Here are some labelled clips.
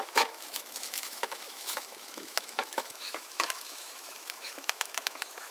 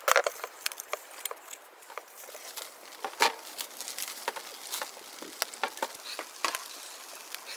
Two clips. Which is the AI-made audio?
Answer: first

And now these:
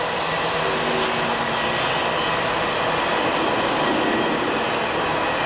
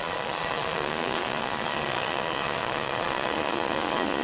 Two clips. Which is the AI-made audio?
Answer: second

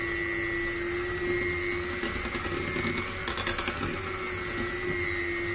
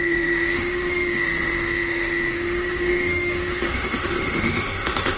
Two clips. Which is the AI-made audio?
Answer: second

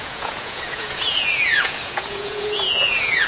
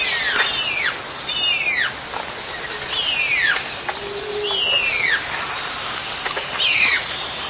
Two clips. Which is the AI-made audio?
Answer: first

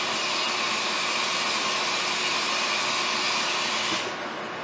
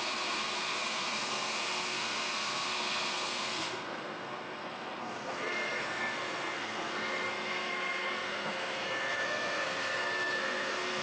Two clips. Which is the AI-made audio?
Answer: second